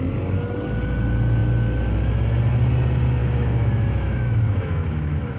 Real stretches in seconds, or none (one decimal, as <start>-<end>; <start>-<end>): 0.0-3.2